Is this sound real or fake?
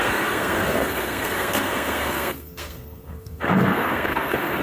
fake